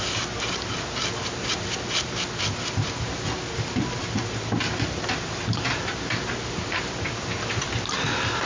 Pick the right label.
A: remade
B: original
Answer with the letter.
B